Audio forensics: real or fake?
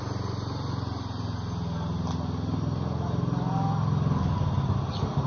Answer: real